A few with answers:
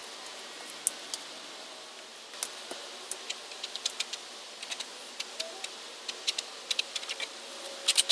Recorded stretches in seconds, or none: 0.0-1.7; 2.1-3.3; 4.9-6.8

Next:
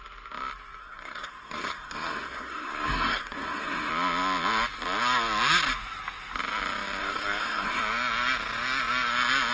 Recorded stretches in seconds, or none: 0.0-0.8; 3.9-7.0; 7.8-9.5

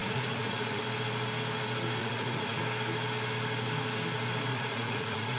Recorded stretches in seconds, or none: 0.8-2.0; 2.6-4.5

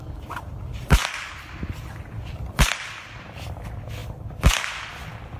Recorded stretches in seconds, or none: 0.0-5.4

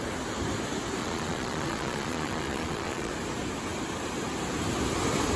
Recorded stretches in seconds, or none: 0.0-1.0; 3.1-5.4